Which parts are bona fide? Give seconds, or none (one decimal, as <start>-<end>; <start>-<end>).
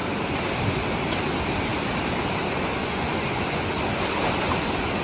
0.0-2.8; 4.0-5.0